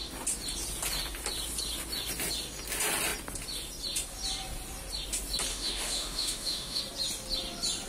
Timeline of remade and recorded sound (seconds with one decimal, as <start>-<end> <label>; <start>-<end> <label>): 0.0-5.5 recorded; 5.5-6.8 remade; 6.8-7.9 recorded